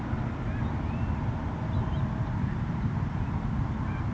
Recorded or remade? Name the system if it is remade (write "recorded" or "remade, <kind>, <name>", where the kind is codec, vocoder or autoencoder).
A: remade, vocoder, BigVGAN v2